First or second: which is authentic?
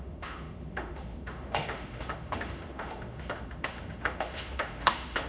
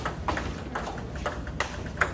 second